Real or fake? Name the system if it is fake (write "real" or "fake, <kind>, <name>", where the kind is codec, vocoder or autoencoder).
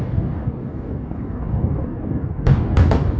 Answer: fake, codec, DAC